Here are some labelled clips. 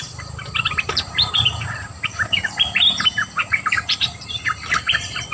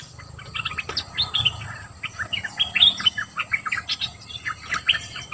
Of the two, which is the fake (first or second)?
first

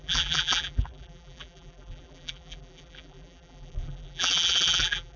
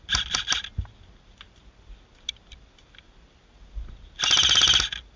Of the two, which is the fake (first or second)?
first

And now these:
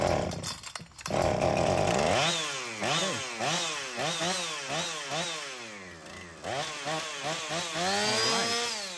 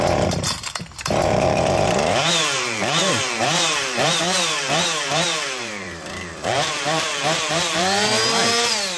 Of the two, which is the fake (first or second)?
second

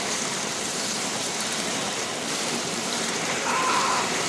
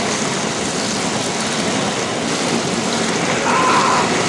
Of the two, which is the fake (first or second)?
first